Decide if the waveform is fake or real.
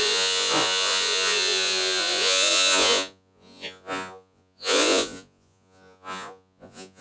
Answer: fake